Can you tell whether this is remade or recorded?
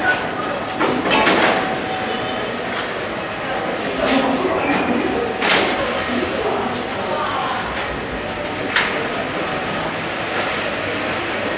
recorded